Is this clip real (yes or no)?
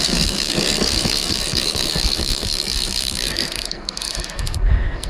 no